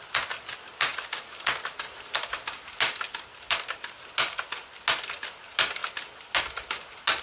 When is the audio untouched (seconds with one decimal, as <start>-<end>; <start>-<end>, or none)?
0.0-7.2